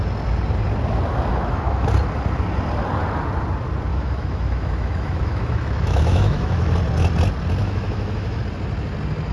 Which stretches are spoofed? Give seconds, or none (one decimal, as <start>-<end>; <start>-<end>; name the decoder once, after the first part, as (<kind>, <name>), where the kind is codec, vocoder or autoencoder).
1.3-1.9 (autoencoder, DAC-VAE); 3.9-6.7; 7.6-8.4